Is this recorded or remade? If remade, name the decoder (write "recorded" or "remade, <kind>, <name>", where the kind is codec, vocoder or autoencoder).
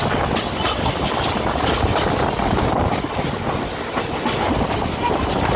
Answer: recorded